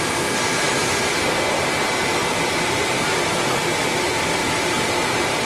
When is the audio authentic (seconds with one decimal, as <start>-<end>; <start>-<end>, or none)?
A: 0.0-5.4